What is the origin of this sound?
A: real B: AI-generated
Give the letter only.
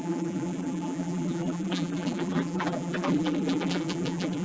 B